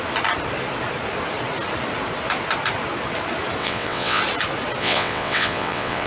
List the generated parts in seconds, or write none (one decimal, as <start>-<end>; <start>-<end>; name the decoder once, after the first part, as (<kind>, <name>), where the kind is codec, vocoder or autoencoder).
3.6-4.2 (vocoder, WaveNeXt); 4.8-6.1